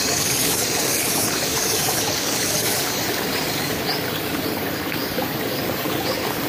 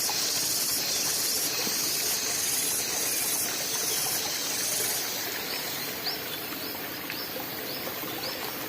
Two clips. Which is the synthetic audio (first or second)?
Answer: first